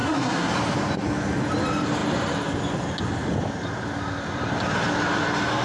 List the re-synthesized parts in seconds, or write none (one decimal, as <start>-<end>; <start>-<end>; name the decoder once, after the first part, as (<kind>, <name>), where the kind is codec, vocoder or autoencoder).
0.0-0.5 (codec, SNAC)